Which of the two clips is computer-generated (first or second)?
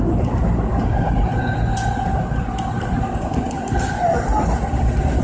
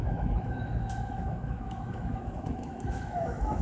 second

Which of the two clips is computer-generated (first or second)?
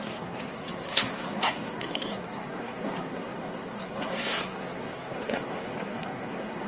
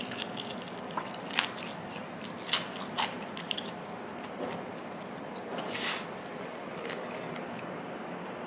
first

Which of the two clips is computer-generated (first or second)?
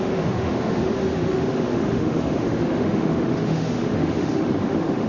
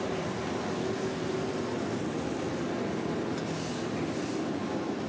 first